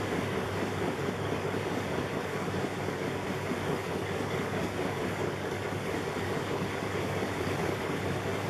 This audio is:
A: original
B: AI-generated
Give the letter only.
B